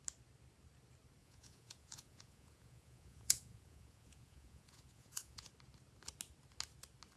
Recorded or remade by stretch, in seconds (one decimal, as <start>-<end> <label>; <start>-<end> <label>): 0.0-1.2 recorded; 1.2-5.5 remade; 5.5-7.2 recorded